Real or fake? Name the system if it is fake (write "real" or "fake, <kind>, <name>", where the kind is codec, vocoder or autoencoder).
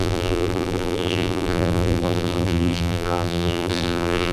fake, vocoder, BigVGAN v2